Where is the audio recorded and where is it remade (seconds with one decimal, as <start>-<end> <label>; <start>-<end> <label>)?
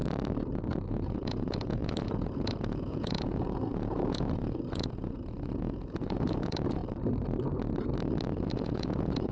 0.0-0.9 recorded; 0.9-6.8 remade; 6.8-8.5 recorded; 8.5-9.3 remade